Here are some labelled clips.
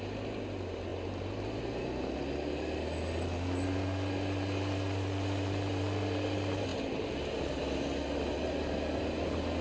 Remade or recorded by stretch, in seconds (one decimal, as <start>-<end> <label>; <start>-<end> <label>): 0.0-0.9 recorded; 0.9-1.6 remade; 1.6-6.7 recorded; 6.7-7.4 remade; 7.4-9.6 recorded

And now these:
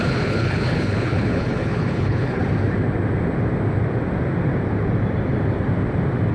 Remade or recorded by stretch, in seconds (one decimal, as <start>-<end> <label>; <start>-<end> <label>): 0.0-2.4 remade; 2.4-6.3 recorded

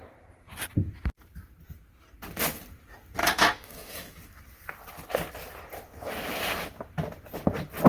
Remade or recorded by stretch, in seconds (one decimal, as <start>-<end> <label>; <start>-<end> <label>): 0.0-3.2 recorded; 3.2-4.2 remade; 4.2-7.9 recorded